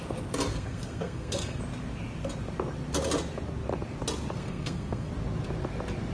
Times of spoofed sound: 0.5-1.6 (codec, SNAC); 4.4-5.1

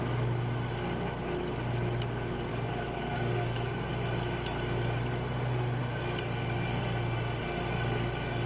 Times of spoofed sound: 2.5-3.9 (codec, DAC)

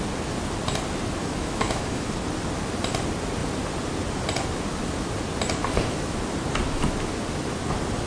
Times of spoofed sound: 1.2-2.1 (autoencoder, DAC-VAE)

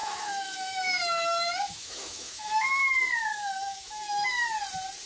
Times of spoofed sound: 0.0-2.8 (autoencoder, DAC-VAE); 3.3-4.3

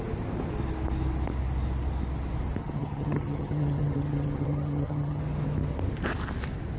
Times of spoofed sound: 2.6-5.2 (vocoder, HiFi-GAN)